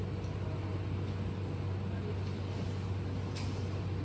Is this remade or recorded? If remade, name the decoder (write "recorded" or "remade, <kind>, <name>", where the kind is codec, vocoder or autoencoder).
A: recorded